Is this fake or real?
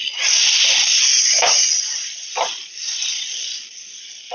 real